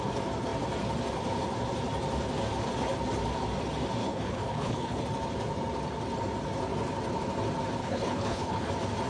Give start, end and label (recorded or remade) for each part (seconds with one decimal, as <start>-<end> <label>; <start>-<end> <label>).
0.0-4.0 recorded; 4.0-5.0 remade; 5.0-7.8 recorded; 7.8-8.7 remade; 8.7-9.1 recorded